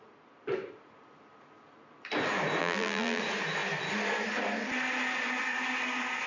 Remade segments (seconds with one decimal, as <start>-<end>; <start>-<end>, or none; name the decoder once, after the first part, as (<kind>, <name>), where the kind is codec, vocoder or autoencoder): 2.6-3.2 (vocoder, BigVGAN v2)